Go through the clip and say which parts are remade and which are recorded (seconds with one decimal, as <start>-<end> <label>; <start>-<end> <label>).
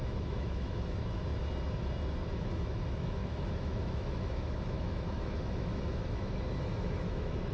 0.0-1.3 remade; 1.3-2.3 recorded; 2.3-7.5 remade